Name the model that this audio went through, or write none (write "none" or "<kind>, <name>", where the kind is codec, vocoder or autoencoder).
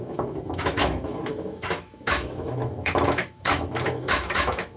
autoencoder, DAC-VAE